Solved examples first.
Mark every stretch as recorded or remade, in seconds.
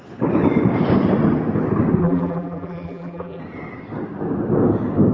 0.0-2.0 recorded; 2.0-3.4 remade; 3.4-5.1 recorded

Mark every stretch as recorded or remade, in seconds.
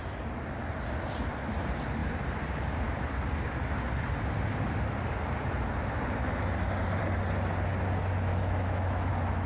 0.0-8.3 recorded; 8.3-9.1 remade; 9.1-9.5 recorded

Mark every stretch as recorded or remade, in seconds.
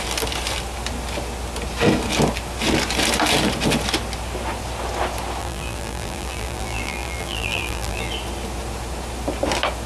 0.0-5.4 recorded; 5.4-8.1 remade; 8.1-9.9 recorded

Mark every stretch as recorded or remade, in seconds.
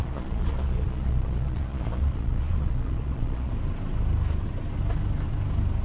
0.0-3.5 remade; 3.5-5.8 recorded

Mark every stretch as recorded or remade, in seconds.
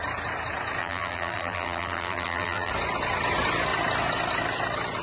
0.0-0.8 recorded; 0.8-2.7 remade; 2.7-5.0 recorded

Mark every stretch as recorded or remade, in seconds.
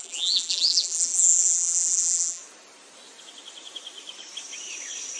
0.0-2.4 remade; 2.4-5.2 recorded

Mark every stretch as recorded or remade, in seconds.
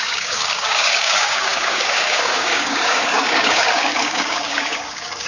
0.0-5.3 remade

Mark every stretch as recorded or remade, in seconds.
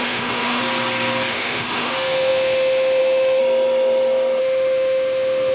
0.0-0.6 remade; 0.6-1.3 recorded; 1.3-3.4 remade; 3.4-4.4 recorded; 4.4-5.5 remade